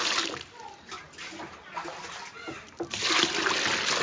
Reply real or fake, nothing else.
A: real